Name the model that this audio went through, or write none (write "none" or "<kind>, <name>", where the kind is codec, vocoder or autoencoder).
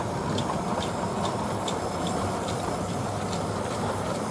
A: vocoder, BigVGAN v2